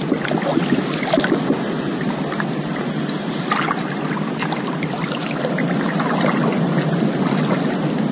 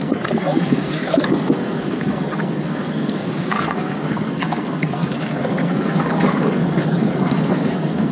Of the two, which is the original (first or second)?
first